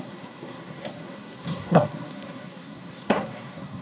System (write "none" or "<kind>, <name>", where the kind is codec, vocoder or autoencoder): codec, SNAC